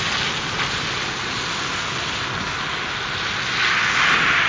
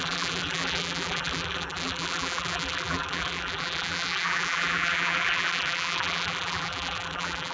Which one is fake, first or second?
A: second